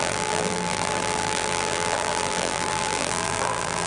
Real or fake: fake